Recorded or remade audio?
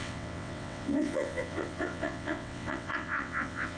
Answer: remade